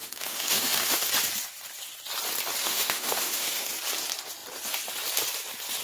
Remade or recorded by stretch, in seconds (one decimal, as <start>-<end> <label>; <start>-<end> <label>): 0.0-1.1 remade; 1.1-2.6 recorded; 2.6-3.7 remade; 3.7-5.8 recorded